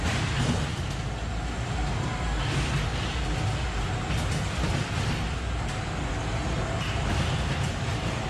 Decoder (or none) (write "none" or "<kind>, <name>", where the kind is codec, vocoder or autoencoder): none